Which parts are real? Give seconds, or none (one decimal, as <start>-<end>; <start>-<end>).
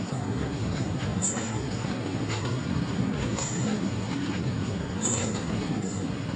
none